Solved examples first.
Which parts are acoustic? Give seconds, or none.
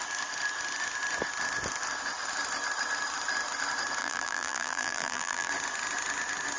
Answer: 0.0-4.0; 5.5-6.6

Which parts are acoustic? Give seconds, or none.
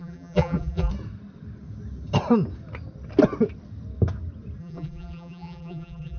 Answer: 0.9-4.6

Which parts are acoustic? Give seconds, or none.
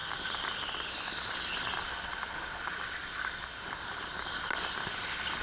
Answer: 0.0-3.0; 5.0-5.4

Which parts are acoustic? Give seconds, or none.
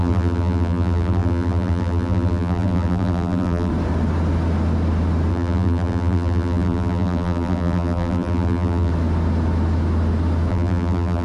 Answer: 3.7-5.3; 8.9-10.5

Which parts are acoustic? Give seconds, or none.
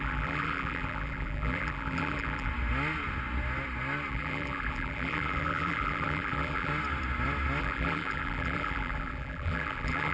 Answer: 2.5-4.1; 6.7-7.6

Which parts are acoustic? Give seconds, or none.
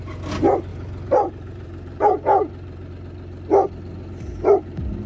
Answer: 0.0-0.7; 2.9-5.1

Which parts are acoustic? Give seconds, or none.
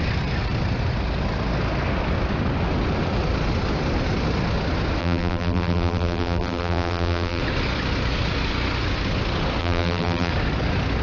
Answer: 0.0-5.0; 7.4-9.6; 10.3-11.0